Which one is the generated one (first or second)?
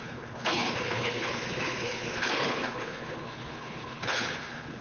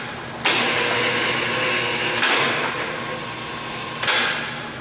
first